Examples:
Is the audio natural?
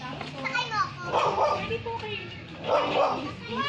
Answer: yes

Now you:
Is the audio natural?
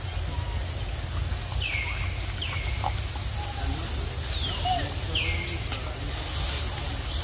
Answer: yes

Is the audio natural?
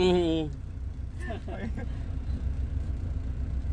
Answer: yes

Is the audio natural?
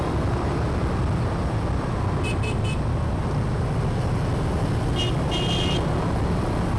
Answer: yes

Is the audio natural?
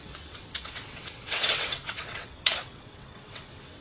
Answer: no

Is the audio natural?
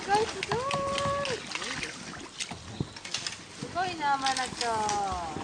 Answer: yes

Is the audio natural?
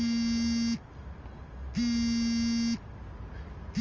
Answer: yes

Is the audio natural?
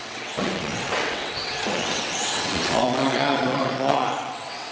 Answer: no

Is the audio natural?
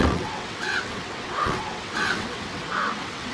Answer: no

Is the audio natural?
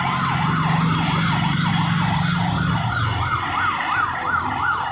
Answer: yes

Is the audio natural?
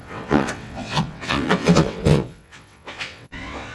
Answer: no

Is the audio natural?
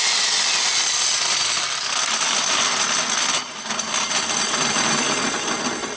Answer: yes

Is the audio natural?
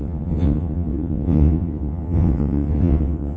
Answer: no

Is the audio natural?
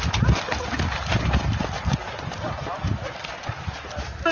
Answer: yes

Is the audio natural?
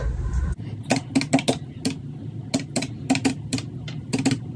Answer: yes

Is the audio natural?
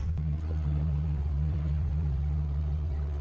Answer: no